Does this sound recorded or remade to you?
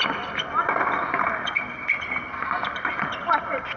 recorded